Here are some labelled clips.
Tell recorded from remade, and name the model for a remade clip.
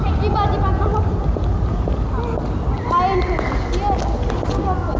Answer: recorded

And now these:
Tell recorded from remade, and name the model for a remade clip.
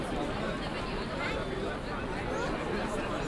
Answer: recorded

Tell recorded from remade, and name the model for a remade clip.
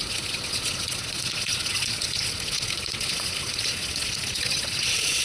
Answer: remade, vocoder, Vocos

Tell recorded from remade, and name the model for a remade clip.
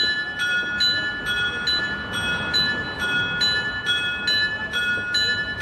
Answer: recorded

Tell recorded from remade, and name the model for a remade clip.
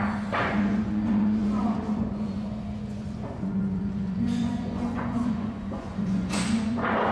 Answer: remade, vocoder, Vocos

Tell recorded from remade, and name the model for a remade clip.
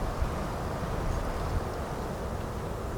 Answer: recorded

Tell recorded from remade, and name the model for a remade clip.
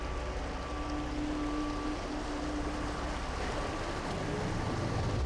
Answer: recorded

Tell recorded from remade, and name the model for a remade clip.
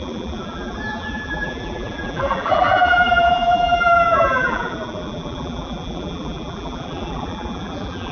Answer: remade, vocoder, BigVGAN v2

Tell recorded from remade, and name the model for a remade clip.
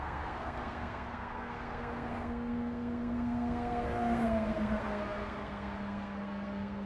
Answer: remade, codec, SNAC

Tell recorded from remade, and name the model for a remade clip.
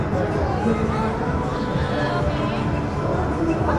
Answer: recorded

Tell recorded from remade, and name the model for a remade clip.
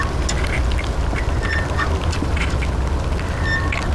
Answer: recorded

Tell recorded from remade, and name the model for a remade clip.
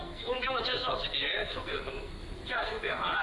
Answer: remade, codec, SNAC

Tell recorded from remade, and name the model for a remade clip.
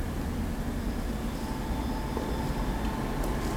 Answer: recorded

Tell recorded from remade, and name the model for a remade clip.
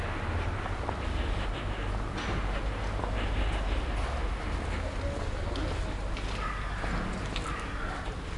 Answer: recorded